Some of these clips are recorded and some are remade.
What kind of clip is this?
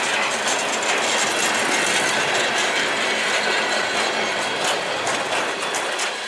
recorded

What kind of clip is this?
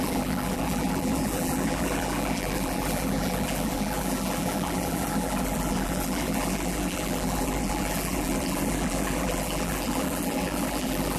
remade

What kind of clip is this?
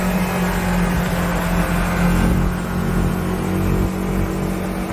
recorded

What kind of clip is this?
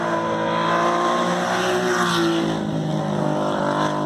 recorded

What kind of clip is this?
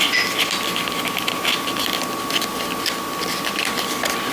recorded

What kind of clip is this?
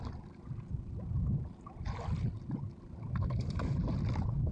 recorded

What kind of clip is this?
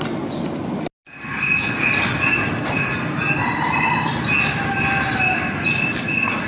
recorded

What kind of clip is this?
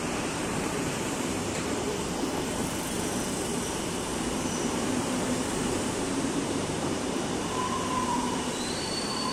remade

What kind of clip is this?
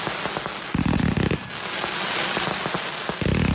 recorded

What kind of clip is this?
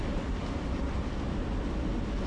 remade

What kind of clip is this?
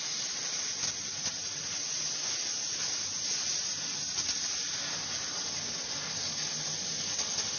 recorded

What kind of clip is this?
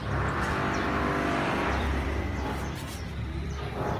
remade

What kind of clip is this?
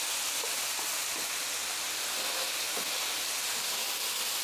recorded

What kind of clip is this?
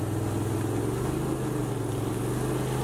recorded